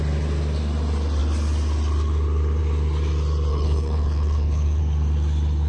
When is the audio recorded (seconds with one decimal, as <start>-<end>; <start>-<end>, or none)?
0.0-3.5; 4.8-5.7